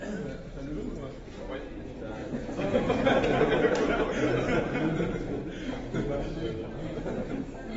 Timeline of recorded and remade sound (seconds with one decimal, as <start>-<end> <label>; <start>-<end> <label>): 0.0-2.2 recorded; 2.2-2.9 remade; 2.9-7.8 recorded